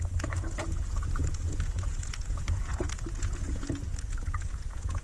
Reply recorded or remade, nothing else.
remade